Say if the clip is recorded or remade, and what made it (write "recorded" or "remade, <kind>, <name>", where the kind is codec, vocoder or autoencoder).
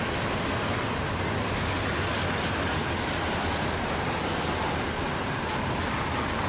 recorded